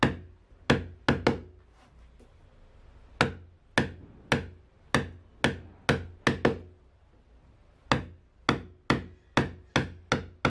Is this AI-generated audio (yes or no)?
no